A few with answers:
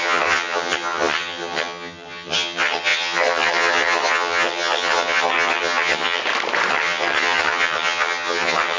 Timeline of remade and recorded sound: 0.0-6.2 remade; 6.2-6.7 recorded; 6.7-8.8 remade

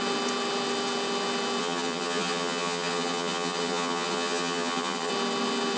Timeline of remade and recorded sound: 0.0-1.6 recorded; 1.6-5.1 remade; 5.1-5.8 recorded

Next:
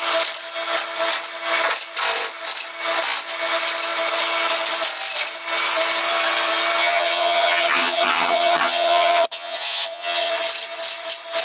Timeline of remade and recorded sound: 0.0-6.8 recorded; 6.8-10.3 remade; 10.3-11.4 recorded

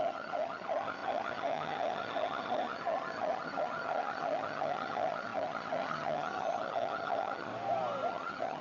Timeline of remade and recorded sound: 0.0-7.5 remade; 7.5-8.1 recorded; 8.1-8.6 remade

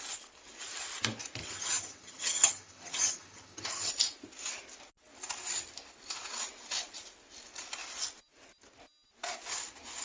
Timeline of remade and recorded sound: 0.0-1.4 recorded; 1.4-3.9 remade; 3.9-10.0 recorded

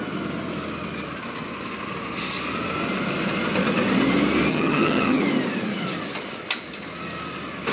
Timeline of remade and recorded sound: 0.0-4.5 recorded; 4.5-5.2 remade; 5.2-7.7 recorded

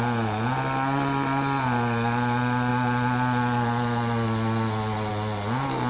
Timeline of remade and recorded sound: 0.0-5.9 recorded

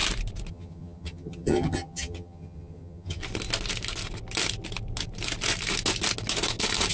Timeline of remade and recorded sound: 0.0-0.5 recorded; 0.5-3.2 remade; 3.2-6.9 recorded